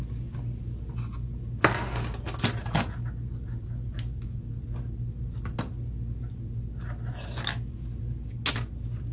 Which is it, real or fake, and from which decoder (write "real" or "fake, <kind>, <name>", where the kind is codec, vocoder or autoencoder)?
real